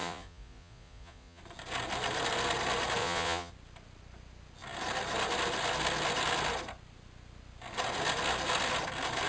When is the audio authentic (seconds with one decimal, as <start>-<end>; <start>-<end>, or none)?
1.4-3.0; 3.5-9.3